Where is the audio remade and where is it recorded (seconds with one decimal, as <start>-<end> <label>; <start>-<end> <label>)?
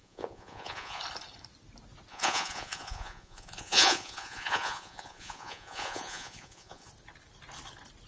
0.0-1.0 remade; 1.0-2.1 recorded; 2.1-6.9 remade; 6.9-8.1 recorded